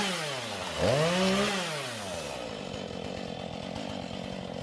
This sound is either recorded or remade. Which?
recorded